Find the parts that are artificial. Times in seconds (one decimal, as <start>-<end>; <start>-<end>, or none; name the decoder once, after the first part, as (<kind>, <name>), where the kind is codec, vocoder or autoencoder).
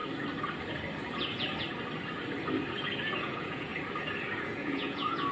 3.2-3.7 (vocoder, Vocos); 4.4-5.3